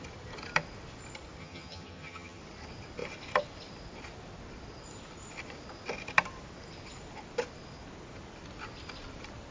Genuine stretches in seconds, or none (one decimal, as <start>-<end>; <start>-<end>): 0.0-1.4; 2.4-9.5